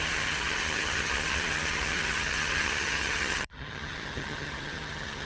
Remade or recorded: remade